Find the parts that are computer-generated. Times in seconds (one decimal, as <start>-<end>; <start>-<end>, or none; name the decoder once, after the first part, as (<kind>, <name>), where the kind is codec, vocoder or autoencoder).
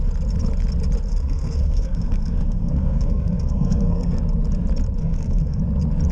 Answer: 1.1-4.2 (codec, SNAC); 5.0-5.6